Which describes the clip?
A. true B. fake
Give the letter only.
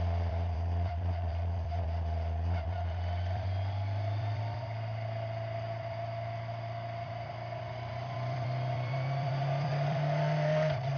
B